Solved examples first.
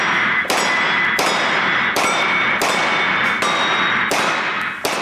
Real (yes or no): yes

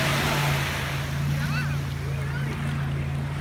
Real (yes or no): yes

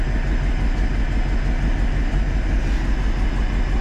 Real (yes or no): yes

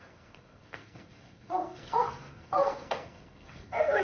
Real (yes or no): no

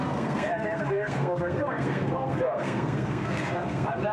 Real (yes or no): no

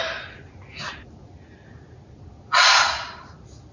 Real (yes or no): yes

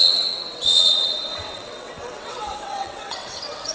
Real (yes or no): no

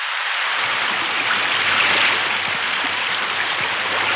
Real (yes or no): yes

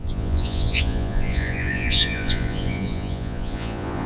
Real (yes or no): no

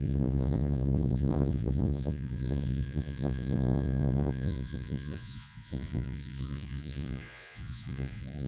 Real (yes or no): no